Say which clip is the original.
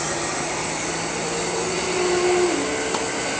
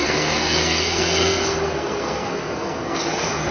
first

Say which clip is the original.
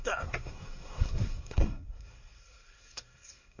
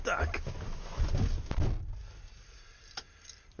second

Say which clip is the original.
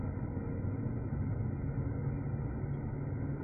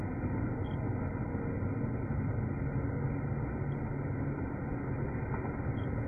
second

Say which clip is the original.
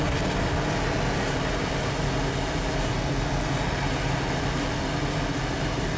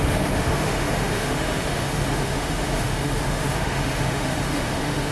first